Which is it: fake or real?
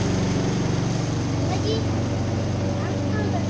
real